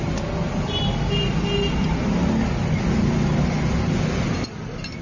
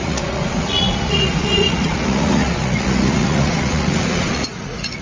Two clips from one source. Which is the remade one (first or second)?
second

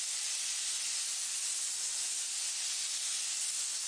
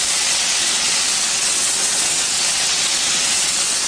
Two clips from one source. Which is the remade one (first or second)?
second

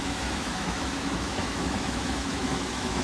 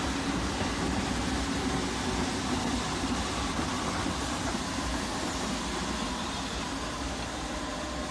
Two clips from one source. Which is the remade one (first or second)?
first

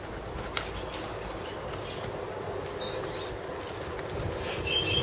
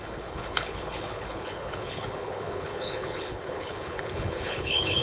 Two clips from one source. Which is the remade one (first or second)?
second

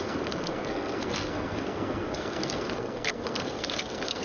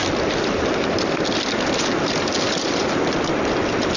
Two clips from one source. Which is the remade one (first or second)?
first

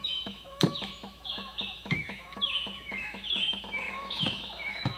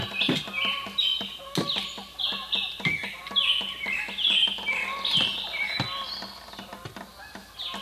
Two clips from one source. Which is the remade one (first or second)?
first